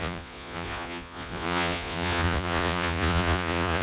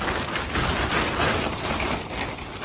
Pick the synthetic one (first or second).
first